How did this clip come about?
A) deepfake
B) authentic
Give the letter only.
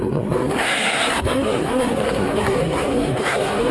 A